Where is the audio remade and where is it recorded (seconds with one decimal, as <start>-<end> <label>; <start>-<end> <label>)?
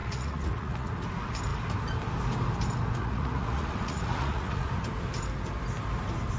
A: 0.0-0.9 remade; 0.9-3.0 recorded; 3.0-4.7 remade; 4.7-6.4 recorded